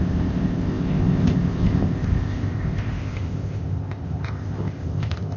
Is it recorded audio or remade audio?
remade